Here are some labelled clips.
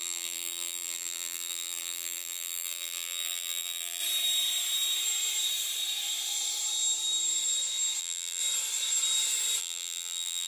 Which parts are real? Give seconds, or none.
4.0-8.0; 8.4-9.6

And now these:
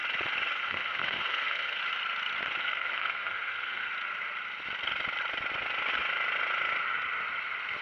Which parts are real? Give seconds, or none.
0.0-0.6; 1.8-2.6; 3.9-7.8

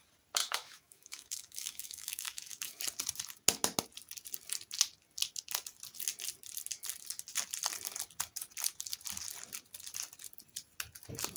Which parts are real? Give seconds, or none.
0.0-0.4; 2.8-11.4

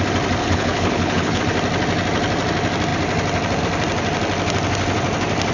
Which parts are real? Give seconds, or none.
0.0-0.4; 1.4-5.5